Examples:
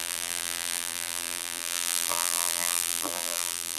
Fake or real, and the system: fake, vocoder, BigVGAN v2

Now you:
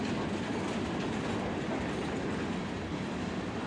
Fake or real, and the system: real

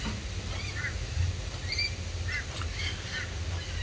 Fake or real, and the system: real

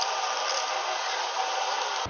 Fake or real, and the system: real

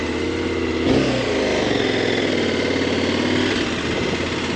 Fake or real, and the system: real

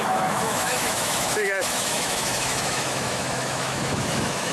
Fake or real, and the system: fake, autoencoder, DAC-VAE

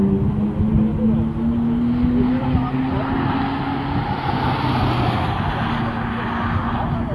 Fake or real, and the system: real